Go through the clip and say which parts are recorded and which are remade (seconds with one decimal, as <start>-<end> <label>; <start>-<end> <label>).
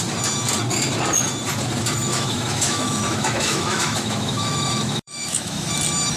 0.0-2.0 recorded; 2.0-5.7 remade; 5.7-6.2 recorded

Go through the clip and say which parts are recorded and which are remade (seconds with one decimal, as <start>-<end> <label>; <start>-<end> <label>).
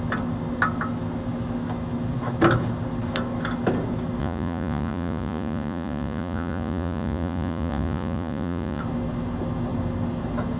0.0-4.2 recorded; 4.2-8.8 remade; 8.8-10.6 recorded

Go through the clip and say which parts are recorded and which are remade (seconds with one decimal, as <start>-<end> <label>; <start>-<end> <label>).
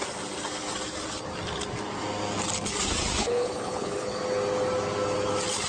0.0-3.2 recorded; 3.2-4.2 remade; 4.2-5.7 recorded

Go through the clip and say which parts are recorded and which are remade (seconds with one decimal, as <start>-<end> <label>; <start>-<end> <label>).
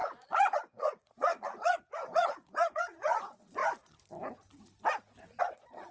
0.0-3.6 remade; 3.6-5.4 recorded; 5.4-5.9 remade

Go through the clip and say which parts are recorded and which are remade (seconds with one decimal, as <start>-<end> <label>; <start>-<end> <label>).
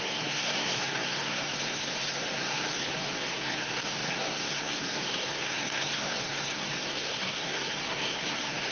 0.0-8.7 remade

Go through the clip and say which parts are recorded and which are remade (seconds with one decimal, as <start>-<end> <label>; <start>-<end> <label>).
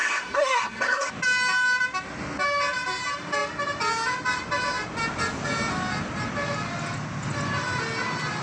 0.0-1.1 remade; 1.1-8.4 recorded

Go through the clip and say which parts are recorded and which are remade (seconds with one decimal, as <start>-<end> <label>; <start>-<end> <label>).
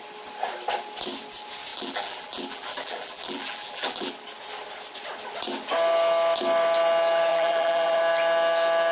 0.0-1.7 recorded; 1.7-4.1 remade; 4.1-7.3 recorded; 7.3-8.0 remade; 8.0-8.9 recorded